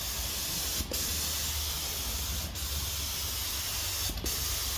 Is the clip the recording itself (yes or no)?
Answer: yes